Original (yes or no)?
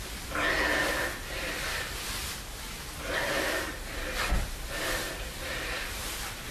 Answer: no